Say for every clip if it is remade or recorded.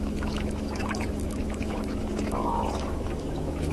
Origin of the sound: remade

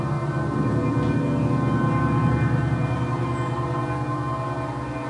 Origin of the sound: recorded